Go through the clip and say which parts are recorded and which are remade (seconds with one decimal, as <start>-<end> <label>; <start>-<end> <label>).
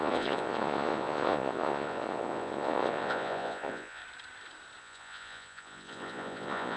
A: 0.0-4.0 remade; 4.0-4.8 recorded; 4.8-6.8 remade